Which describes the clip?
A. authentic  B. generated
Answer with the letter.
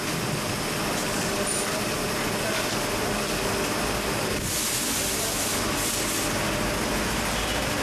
A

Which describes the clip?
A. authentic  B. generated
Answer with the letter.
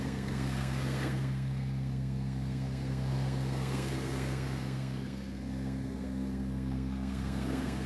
B